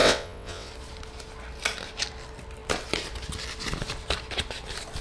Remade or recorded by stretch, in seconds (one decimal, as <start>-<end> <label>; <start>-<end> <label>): 0.0-0.7 remade; 0.7-5.0 recorded